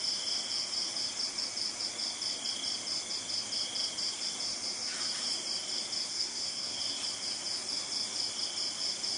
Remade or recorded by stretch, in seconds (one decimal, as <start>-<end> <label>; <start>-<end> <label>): 0.0-6.1 recorded; 6.1-6.8 remade; 6.8-9.2 recorded